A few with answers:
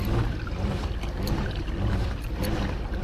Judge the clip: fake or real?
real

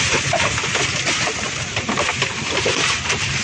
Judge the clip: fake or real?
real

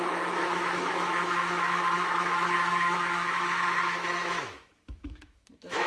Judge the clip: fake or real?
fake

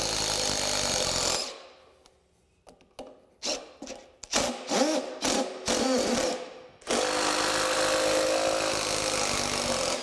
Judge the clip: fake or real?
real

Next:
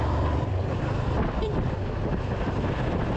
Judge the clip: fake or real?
real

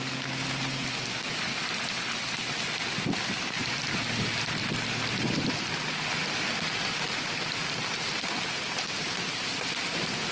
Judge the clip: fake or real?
real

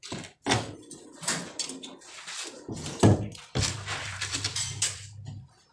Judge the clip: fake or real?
real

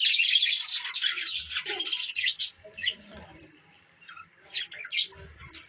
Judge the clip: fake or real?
real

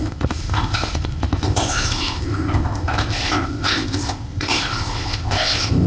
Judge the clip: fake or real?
fake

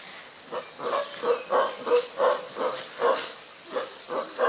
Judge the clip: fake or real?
real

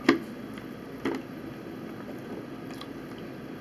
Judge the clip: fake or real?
real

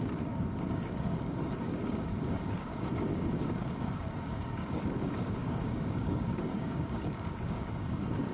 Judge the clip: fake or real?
fake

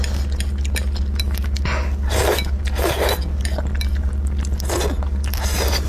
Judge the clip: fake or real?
real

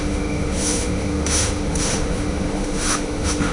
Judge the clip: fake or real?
fake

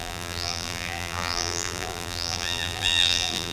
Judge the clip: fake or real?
fake